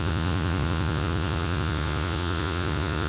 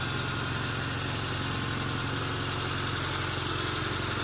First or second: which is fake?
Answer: first